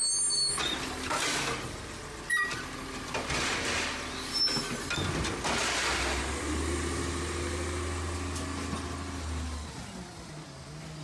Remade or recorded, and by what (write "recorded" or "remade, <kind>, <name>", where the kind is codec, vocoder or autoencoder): recorded